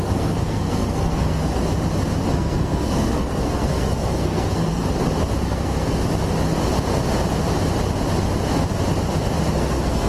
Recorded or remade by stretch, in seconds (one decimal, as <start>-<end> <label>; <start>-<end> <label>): 0.0-1.6 remade; 1.6-2.3 recorded; 2.3-4.8 remade; 4.8-5.4 recorded; 5.4-6.0 remade; 6.0-9.5 recorded; 9.5-10.1 remade